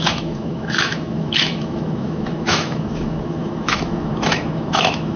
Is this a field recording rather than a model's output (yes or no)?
no